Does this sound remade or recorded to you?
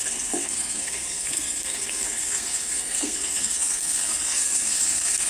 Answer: remade